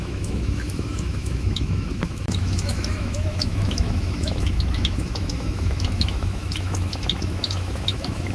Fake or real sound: fake